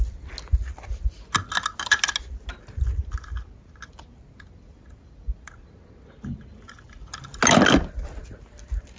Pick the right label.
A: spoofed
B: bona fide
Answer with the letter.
B